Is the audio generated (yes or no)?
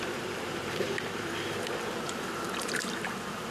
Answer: yes